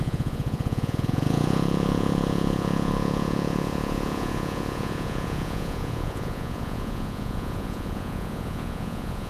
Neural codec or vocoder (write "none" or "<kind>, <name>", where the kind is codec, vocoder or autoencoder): vocoder, Vocos